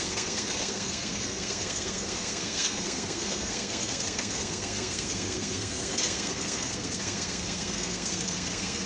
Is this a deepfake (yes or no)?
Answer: yes